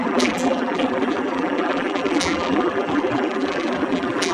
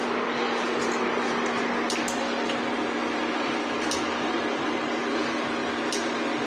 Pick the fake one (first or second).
first